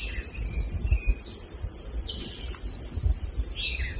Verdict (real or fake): real